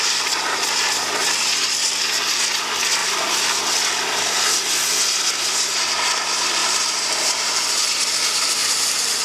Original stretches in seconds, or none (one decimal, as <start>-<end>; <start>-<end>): 0.0-3.0; 3.6-6.6; 8.0-8.6